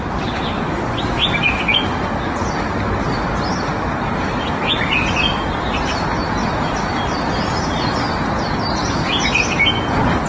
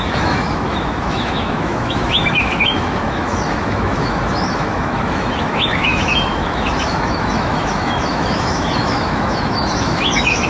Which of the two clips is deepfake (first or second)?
second